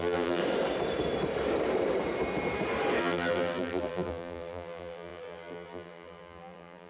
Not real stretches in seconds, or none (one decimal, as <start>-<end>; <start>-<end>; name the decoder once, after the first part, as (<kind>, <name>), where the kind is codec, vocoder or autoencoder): 0.0-0.4 (vocoder, BigVGAN v2); 3.0-6.9